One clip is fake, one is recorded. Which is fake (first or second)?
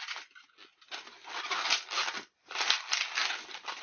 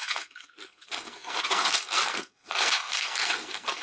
second